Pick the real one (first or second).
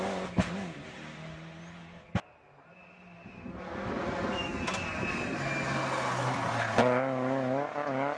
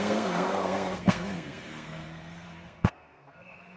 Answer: first